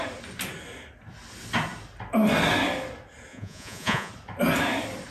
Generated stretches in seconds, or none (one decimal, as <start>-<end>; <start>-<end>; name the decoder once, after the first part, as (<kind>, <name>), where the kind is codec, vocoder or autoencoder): 3.3-4.1 (vocoder, Vocos)